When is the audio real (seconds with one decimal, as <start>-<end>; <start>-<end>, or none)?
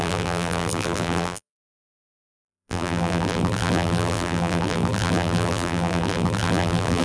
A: none